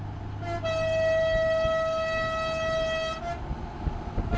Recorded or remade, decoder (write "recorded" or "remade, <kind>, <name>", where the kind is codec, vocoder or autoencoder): recorded